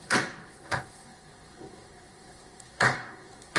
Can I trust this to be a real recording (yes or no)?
no